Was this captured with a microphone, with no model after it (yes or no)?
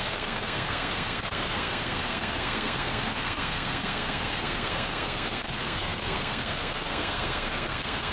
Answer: no